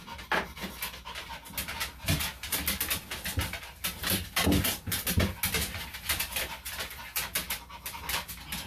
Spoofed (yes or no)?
no